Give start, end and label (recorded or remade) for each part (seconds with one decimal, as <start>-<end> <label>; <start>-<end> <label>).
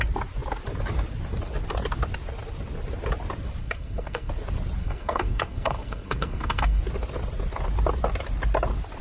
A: 0.0-3.6 recorded; 3.6-4.3 remade; 4.3-4.8 recorded; 4.8-6.8 remade; 6.8-9.0 recorded